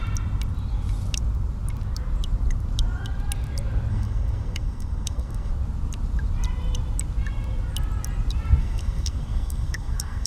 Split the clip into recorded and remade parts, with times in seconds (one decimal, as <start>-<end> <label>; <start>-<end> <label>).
0.0-3.9 recorded; 3.9-5.5 remade; 5.5-8.6 recorded; 8.6-10.3 remade